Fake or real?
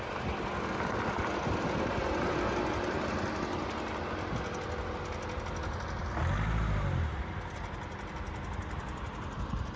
real